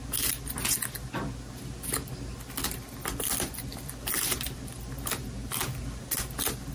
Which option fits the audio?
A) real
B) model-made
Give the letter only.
A